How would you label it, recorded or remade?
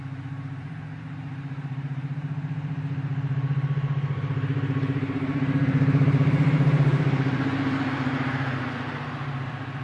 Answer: remade